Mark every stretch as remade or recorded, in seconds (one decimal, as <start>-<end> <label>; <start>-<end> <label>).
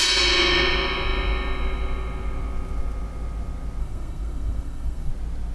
0.0-3.8 recorded; 3.8-5.1 remade; 5.1-5.5 recorded